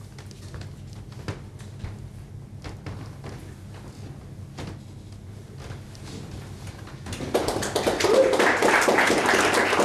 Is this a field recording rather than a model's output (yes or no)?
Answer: yes